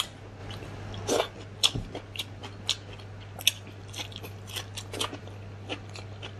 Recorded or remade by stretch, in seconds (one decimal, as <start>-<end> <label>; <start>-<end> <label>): 0.0-6.4 recorded